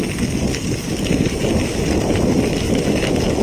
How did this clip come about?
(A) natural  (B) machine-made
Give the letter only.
A